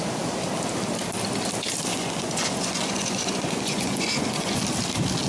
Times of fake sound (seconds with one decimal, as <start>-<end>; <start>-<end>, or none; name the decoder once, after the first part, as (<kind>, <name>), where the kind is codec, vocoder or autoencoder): 1.9-4.6 (vocoder, Vocos)